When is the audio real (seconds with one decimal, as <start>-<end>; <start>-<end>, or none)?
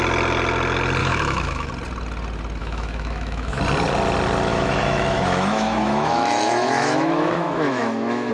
0.0-1.0; 1.7-2.6; 3.6-4.5